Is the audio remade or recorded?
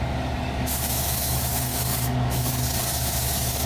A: remade